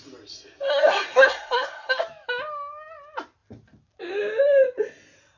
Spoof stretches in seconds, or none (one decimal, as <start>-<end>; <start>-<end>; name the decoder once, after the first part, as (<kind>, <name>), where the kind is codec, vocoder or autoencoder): 0.7-2.0 (codec, SNAC)